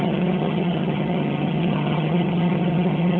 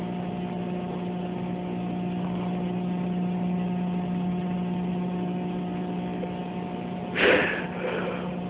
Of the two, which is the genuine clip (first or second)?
second